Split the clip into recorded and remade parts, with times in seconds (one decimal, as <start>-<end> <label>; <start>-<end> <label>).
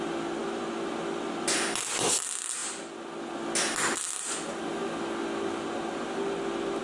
0.0-6.8 recorded